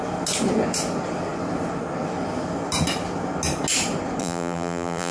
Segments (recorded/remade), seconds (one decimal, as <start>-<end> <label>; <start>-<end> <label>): 0.0-4.2 recorded; 4.2-5.1 remade